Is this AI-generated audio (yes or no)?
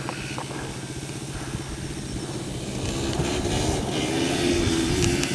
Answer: no